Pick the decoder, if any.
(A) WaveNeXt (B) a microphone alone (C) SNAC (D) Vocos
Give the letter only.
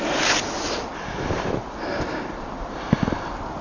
B